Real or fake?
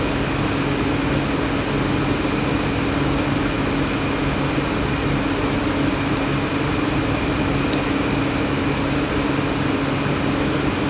real